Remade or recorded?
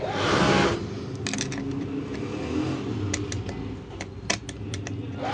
recorded